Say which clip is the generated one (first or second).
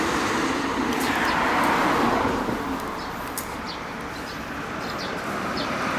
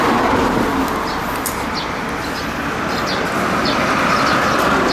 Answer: first